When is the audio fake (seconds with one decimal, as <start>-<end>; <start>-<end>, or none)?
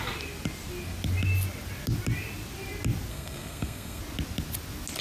3.1-4.0